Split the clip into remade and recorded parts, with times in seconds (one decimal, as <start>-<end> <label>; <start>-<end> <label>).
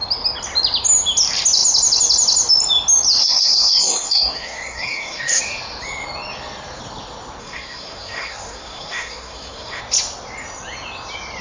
0.0-3.2 recorded; 3.2-5.4 remade; 5.4-7.4 recorded; 7.4-9.8 remade; 9.8-11.4 recorded